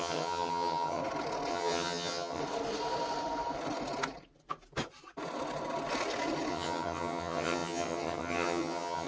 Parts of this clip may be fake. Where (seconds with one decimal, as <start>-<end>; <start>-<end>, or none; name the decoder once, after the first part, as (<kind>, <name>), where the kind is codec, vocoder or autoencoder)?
0.0-1.0 (vocoder, HiFi-GAN); 1.5-2.4; 6.5-9.1